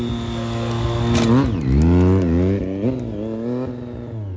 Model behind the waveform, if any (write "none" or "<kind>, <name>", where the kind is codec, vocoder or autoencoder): none